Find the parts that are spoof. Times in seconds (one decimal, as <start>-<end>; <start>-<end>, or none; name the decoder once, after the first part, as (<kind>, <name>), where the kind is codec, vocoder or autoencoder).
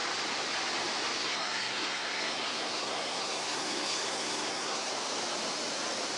1.2-4.9 (codec, SNAC)